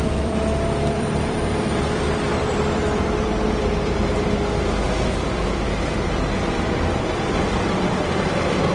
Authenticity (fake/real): fake